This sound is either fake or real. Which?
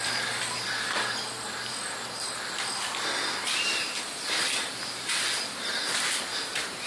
real